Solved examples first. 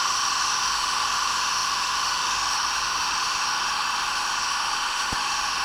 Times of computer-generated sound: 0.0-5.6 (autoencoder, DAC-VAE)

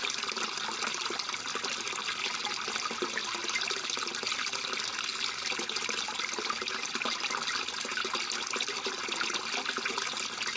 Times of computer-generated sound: none

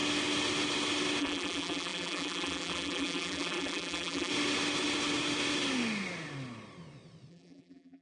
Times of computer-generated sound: 1.2-4.3 (vocoder, BigVGAN v2); 7.3-8.0